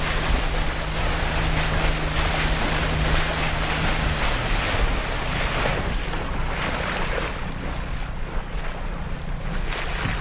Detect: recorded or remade recorded